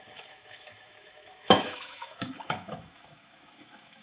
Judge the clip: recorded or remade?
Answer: remade